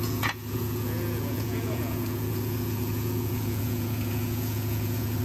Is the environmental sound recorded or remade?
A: remade